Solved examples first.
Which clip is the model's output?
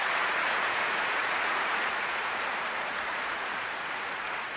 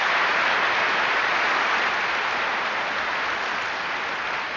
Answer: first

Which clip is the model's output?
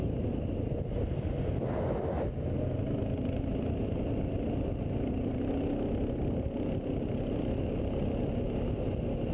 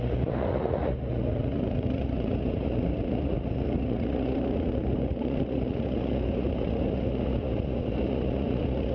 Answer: second